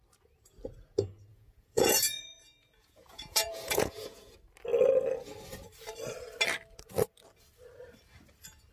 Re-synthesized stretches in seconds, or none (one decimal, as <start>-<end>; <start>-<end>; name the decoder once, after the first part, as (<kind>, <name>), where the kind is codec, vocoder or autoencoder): 1.3-4.3 (vocoder, Vocos)